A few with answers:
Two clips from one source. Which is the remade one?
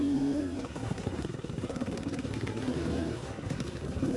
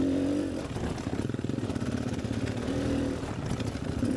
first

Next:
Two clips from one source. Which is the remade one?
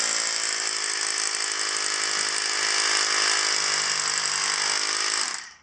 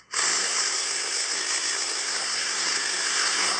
second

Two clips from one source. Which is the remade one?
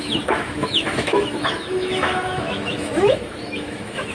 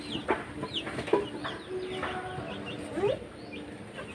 first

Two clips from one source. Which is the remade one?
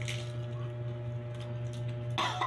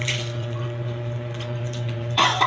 second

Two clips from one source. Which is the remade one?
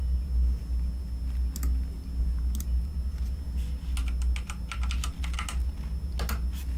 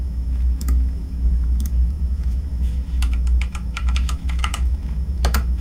second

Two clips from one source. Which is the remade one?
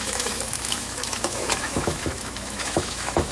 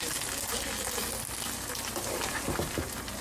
first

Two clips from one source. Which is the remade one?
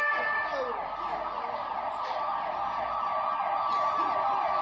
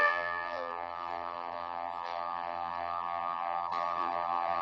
second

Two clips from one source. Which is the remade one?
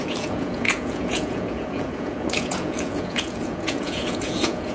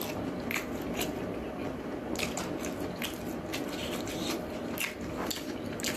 first